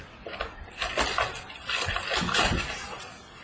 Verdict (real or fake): real